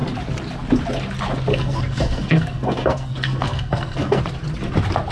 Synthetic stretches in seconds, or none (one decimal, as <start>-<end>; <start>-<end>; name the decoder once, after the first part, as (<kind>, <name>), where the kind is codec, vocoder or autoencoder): 1.5-4.2 (codec, SNAC)